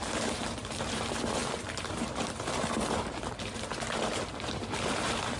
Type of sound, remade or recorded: remade